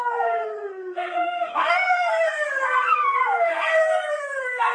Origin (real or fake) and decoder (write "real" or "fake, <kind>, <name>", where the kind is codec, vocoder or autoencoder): fake, codec, SNAC